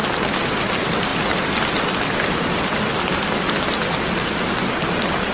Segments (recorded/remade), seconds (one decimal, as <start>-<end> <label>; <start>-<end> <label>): 0.0-5.3 recorded